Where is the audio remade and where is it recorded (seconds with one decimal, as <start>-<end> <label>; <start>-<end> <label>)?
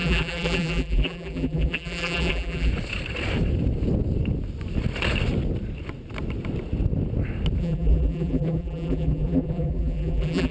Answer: 0.0-2.7 remade; 2.7-7.6 recorded; 7.6-10.5 remade